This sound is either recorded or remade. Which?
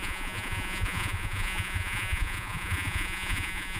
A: remade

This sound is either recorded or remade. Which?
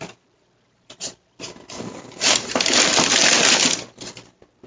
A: recorded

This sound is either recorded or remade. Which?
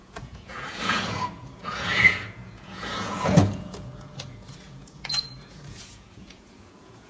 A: remade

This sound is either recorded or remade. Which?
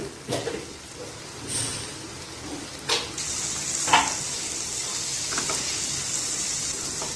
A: recorded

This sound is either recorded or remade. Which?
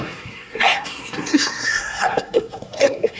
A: remade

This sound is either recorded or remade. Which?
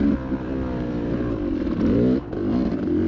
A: recorded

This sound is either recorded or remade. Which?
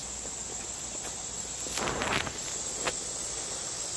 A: recorded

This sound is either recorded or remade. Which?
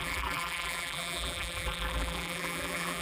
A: remade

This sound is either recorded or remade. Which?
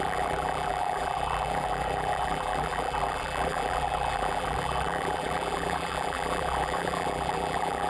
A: remade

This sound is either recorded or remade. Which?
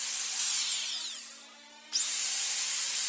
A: recorded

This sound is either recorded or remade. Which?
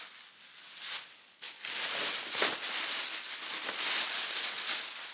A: recorded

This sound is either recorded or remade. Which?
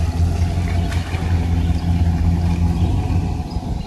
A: recorded